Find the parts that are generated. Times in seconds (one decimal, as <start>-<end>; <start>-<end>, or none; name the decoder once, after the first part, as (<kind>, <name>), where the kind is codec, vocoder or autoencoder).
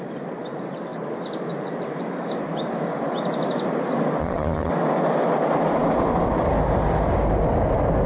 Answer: 4.2-4.7 (vocoder, HiFi-GAN)